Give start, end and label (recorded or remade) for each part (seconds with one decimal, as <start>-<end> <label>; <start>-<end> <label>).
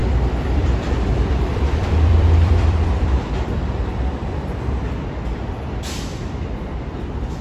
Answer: 0.0-4.4 remade; 4.4-6.1 recorded; 6.1-6.6 remade; 6.6-7.4 recorded